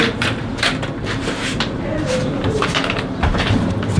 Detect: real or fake fake